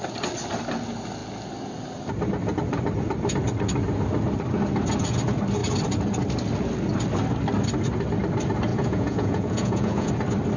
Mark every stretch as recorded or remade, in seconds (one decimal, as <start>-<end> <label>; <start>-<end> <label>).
0.0-8.7 recorded; 8.7-10.1 remade; 10.1-10.6 recorded